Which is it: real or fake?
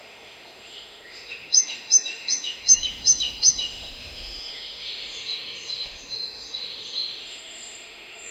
fake